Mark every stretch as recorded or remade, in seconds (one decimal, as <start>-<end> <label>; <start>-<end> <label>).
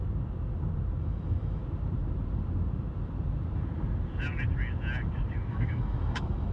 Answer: 0.0-1.0 recorded; 1.0-1.6 remade; 1.6-5.5 recorded; 5.5-6.5 remade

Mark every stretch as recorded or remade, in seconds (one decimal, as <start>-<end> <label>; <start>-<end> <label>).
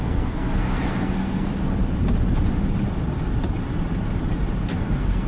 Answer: 0.0-1.5 remade; 1.5-4.7 recorded; 4.7-5.3 remade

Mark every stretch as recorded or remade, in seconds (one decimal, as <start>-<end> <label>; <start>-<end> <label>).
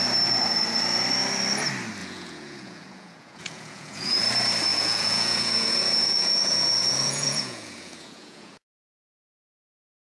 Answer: 0.0-2.0 recorded; 2.0-4.2 remade; 4.2-4.7 recorded; 4.7-8.7 remade; 8.7-10.1 recorded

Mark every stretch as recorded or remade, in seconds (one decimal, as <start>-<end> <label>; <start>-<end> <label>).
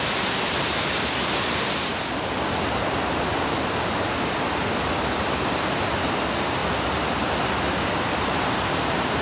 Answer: 0.0-1.9 remade; 1.9-5.7 recorded; 5.7-6.6 remade; 6.6-8.1 recorded; 8.1-9.2 remade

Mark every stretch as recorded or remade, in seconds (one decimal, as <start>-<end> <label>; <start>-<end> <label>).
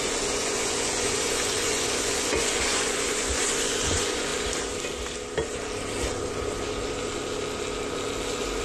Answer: 0.0-4.3 remade; 4.3-8.6 recorded